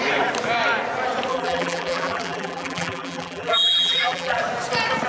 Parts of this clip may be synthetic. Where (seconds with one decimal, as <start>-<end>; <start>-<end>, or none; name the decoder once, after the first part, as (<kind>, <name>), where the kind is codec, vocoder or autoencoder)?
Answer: 1.3-4.4 (vocoder, BigVGAN v2)